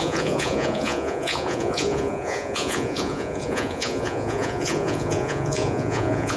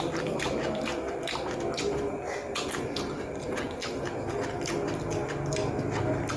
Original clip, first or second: second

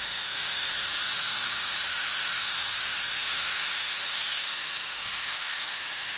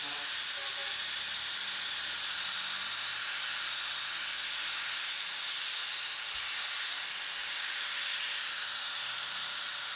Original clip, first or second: second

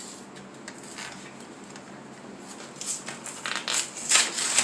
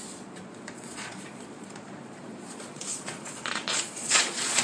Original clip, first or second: first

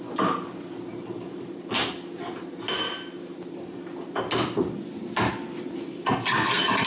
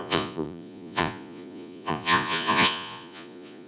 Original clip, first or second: first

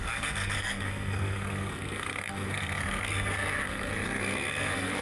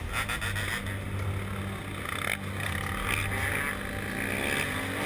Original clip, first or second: second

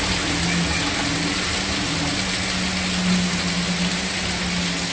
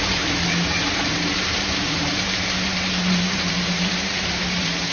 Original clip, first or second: first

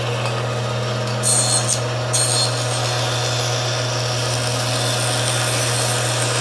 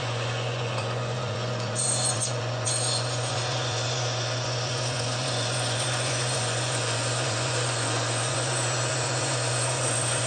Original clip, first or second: first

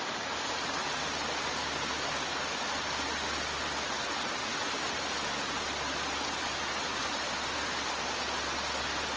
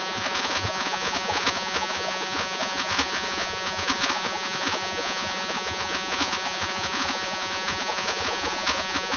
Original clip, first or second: first